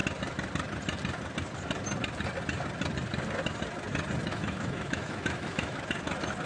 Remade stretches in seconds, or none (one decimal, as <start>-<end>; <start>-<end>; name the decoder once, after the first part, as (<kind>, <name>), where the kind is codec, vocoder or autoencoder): 4.3-5.8 (autoencoder, DAC-VAE)